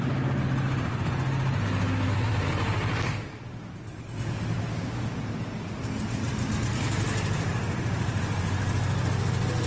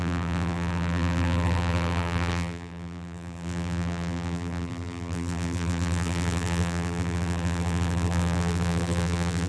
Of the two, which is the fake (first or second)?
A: second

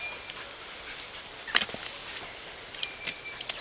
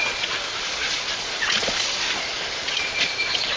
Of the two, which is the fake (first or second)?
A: second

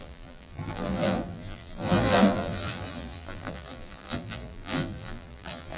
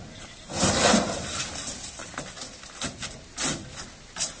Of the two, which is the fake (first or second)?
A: first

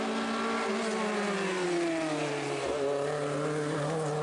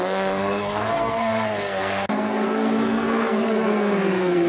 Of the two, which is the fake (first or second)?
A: second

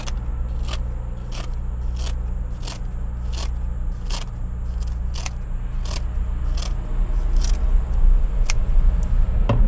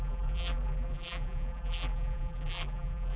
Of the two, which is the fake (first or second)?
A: second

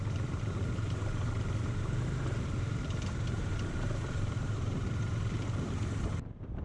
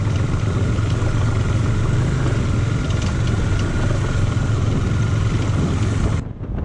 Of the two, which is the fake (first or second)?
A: first